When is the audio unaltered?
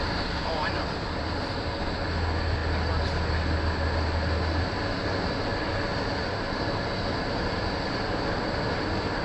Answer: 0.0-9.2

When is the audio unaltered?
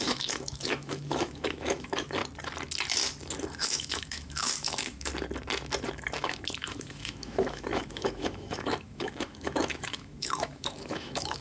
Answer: 2.2-3.6; 5.1-5.8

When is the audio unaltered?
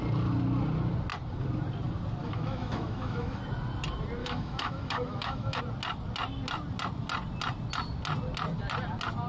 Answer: 0.0-2.2; 3.4-4.2; 5.6-9.3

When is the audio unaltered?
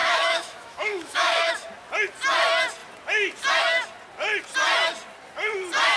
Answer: 1.5-6.0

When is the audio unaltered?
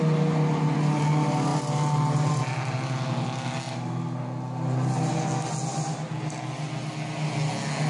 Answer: 0.0-7.9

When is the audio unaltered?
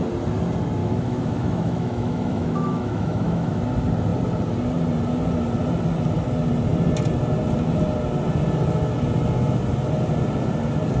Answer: 0.0-0.8; 3.6-11.0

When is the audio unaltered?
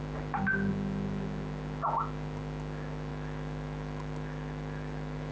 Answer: 0.0-3.1